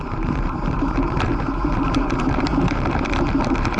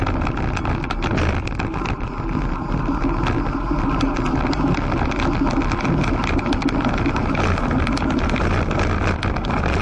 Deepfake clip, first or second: first